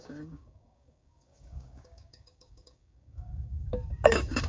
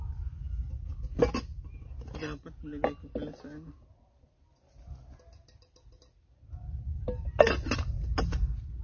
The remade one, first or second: first